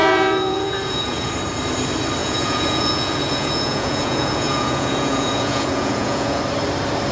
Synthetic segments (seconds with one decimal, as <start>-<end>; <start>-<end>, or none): 0.0-1.3; 2.2-6.4